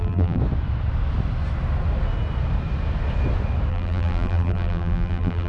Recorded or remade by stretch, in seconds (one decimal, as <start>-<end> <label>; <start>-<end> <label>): 0.0-0.4 remade; 0.4-3.7 recorded; 3.7-5.5 remade